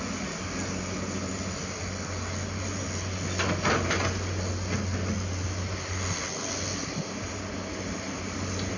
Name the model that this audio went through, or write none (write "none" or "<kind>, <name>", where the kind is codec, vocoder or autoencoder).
none